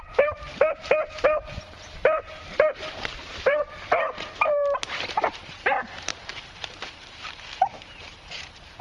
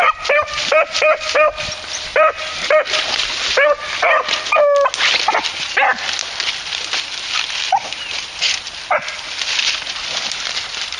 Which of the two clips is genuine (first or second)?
second